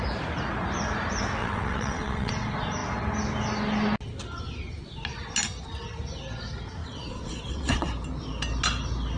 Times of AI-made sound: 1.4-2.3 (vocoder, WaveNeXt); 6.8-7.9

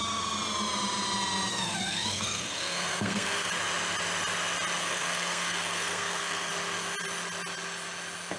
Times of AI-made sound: 1.5-3.5 (codec, SNAC); 4.8-6.5